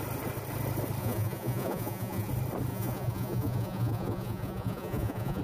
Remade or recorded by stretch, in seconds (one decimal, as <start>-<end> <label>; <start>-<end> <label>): 0.0-1.0 recorded; 1.0-2.3 remade; 2.3-2.7 recorded; 2.7-5.4 remade